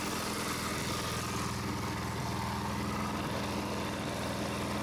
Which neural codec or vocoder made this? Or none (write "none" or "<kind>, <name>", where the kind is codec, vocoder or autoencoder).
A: none